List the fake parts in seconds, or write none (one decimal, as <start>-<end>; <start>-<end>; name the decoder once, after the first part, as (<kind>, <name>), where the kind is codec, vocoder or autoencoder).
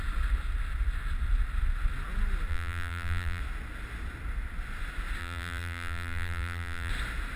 2.5-3.4 (vocoder, BigVGAN v2); 5.2-6.9